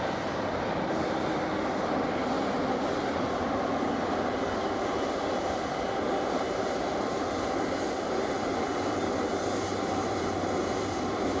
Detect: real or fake fake